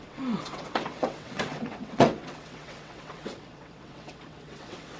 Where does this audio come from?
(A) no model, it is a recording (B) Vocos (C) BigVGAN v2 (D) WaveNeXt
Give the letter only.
D